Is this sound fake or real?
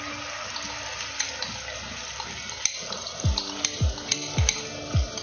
real